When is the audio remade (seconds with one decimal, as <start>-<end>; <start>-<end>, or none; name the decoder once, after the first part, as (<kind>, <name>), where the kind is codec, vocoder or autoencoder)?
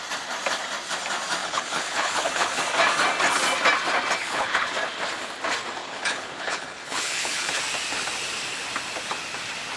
1.4-2.6 (codec, HILCodec); 4.2-4.7; 5.8-7.6